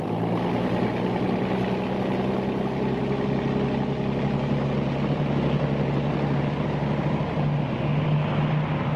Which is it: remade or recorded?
recorded